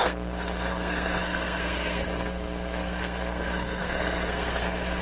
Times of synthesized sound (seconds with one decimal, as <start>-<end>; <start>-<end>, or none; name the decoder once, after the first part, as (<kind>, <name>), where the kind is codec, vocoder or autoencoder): 0.0-5.0 (codec, SNAC)